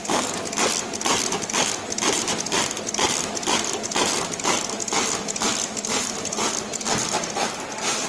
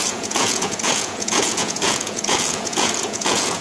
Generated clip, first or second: second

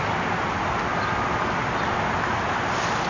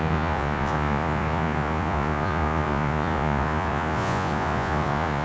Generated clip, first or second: second